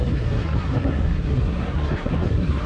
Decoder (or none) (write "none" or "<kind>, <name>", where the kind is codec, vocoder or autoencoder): codec, SNAC